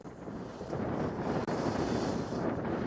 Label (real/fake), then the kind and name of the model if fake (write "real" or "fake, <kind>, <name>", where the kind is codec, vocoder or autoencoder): fake, vocoder, BigVGAN v2